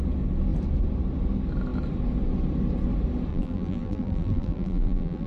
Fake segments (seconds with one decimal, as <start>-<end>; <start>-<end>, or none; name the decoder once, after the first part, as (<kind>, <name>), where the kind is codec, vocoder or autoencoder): 3.3-5.3 (vocoder, BigVGAN v2)